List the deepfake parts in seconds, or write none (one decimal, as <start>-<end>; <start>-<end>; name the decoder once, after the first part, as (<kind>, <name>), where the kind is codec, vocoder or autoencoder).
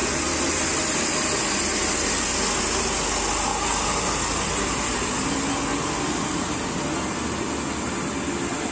none